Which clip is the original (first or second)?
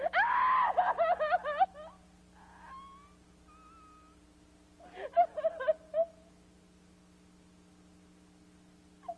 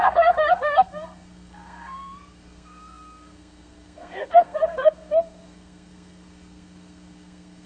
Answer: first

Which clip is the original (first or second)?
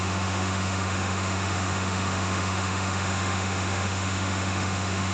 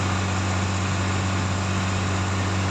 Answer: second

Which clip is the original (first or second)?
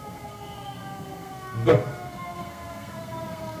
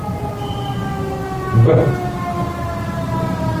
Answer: second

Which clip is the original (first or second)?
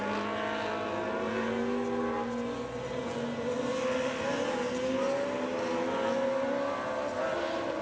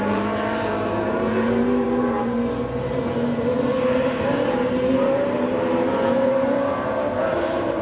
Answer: first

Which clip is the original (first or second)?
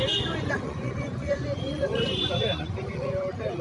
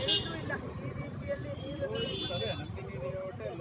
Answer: second